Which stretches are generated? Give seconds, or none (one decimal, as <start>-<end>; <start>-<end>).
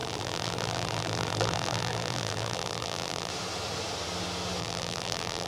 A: 0.0-3.3; 4.6-5.5